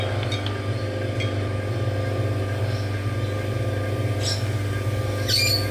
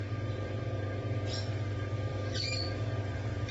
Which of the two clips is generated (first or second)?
second